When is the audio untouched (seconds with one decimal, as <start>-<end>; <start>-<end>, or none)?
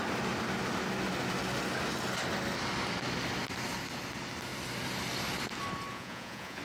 0.0-5.9